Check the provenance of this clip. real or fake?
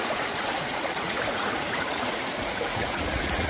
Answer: fake